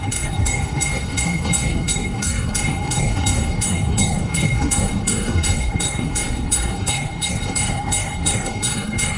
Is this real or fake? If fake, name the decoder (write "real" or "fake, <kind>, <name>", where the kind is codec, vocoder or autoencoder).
fake, codec, SNAC